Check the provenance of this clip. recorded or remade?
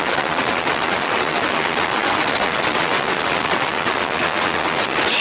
remade